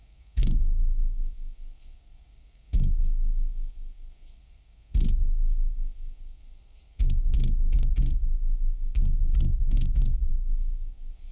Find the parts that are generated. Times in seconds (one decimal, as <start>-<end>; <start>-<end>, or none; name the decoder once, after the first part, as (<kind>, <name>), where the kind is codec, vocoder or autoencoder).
0.0-11.3 (codec, SNAC)